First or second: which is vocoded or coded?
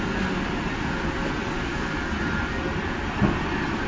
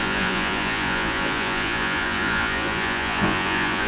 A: second